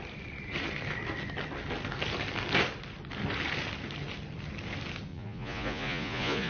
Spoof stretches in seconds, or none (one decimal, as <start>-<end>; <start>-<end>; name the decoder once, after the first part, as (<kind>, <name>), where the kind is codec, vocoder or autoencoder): 5.1-6.5 (vocoder, Vocos)